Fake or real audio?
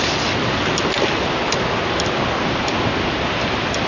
real